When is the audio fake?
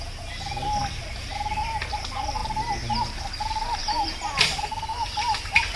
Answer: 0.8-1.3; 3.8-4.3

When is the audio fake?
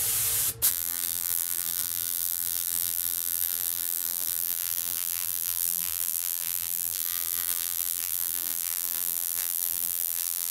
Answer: 0.7-10.5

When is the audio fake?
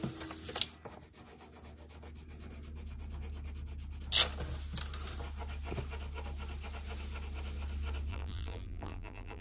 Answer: 8.1-9.4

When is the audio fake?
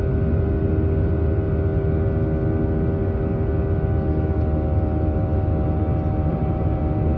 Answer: 6.3-6.8